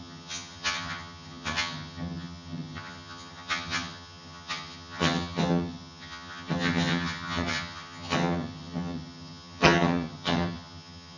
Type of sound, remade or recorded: remade